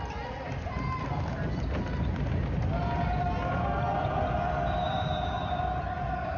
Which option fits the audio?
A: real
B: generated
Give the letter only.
A